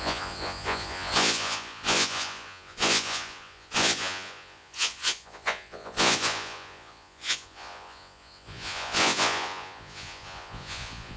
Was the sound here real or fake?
fake